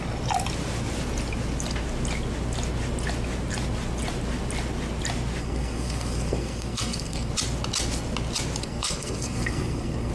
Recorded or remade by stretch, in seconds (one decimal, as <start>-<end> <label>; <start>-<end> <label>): 0.0-5.4 recorded; 5.4-7.3 remade; 7.3-8.6 recorded; 8.6-10.1 remade